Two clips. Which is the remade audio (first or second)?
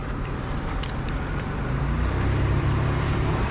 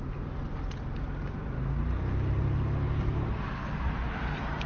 first